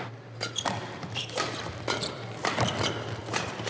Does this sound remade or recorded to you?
remade